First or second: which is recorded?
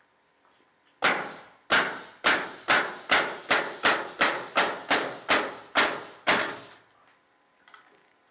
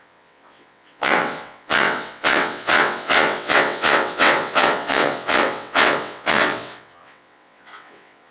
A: first